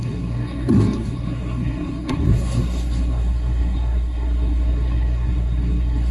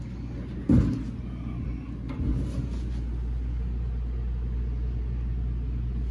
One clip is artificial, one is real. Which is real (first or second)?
second